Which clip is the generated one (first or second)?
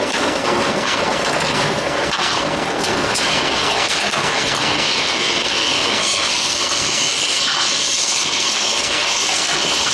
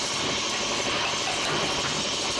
first